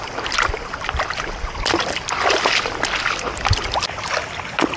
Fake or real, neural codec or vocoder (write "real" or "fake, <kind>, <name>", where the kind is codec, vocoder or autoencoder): real